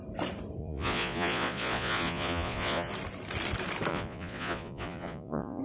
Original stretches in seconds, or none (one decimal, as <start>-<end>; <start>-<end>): 0.0-0.6; 2.9-3.9